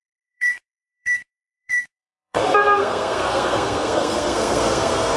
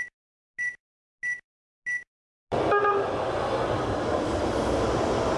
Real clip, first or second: second